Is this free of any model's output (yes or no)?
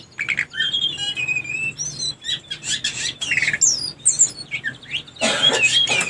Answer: yes